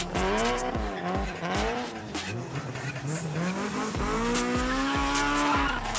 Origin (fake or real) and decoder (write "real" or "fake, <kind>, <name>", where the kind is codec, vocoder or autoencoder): real